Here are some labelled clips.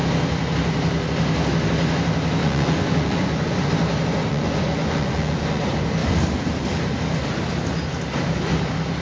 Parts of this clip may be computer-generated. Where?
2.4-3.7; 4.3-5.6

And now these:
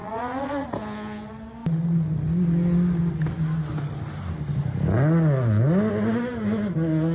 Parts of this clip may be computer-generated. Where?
0.0-0.7

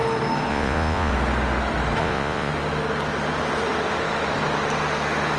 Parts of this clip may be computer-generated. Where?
0.5-1.1; 2.0-2.5

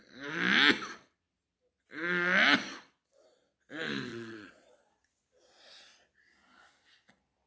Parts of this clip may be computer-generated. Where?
4.1-5.1

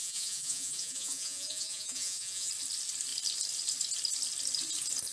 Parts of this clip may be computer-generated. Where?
0.0-2.5

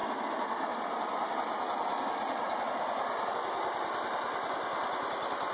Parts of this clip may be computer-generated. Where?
none

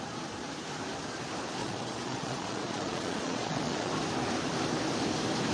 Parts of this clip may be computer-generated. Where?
1.6-3.9

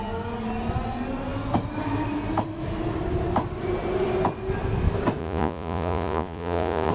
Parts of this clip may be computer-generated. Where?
5.2-6.9